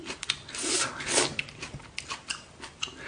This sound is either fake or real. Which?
real